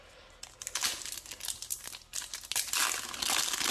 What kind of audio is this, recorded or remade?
recorded